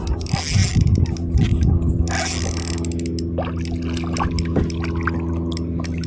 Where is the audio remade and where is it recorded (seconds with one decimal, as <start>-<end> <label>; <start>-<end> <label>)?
0.0-6.1 recorded